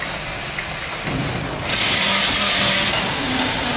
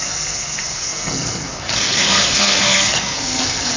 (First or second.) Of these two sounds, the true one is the first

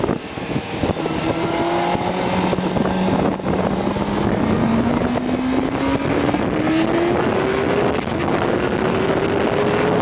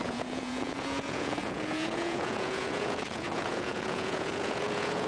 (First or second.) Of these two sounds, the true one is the first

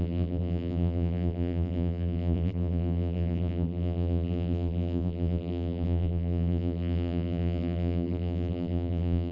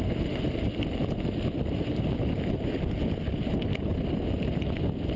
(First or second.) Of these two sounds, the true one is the second